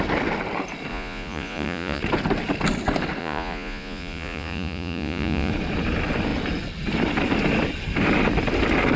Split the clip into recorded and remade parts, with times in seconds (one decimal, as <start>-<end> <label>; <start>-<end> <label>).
0.0-0.9 recorded; 0.9-2.0 remade; 2.0-3.2 recorded; 3.2-5.5 remade; 5.5-9.0 recorded

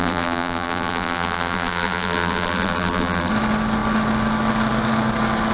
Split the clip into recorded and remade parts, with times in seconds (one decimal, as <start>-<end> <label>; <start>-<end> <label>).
0.0-3.3 remade; 3.3-5.5 recorded